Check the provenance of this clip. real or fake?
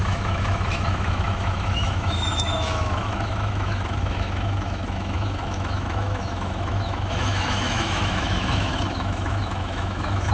fake